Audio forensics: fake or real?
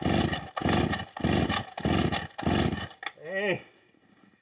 real